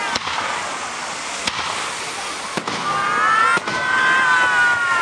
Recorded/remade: recorded